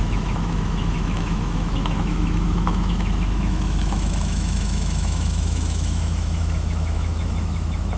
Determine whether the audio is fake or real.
fake